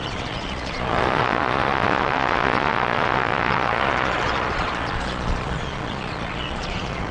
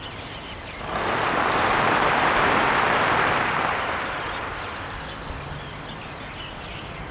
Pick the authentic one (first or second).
second